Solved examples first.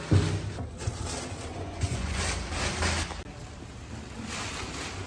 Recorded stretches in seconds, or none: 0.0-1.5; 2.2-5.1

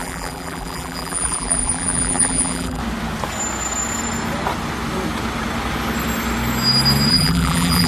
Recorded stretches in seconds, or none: 2.8-7.1